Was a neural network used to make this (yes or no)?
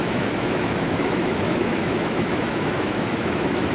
yes